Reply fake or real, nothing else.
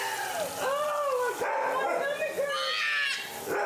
real